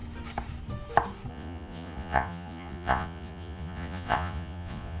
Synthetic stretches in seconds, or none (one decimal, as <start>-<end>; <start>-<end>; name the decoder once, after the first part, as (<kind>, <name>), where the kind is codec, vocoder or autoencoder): 1.3-5.0 (vocoder, Vocos)